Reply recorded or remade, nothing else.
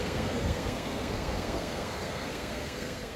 remade